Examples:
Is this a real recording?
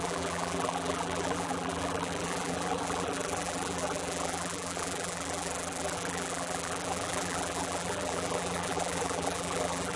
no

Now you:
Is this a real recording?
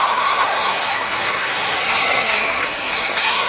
no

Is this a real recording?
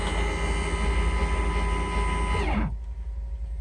yes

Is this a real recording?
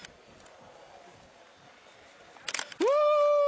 yes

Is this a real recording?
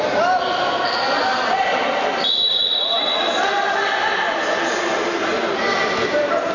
yes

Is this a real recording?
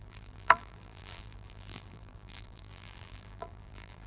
no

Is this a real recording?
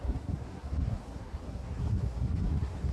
no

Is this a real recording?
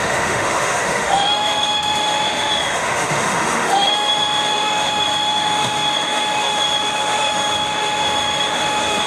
no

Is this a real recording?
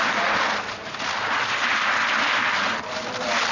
yes